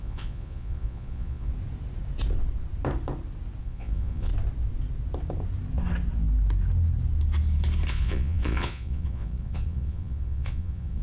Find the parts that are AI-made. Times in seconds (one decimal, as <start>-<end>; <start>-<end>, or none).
0.0-1.5; 3.6-4.3; 7.9-11.0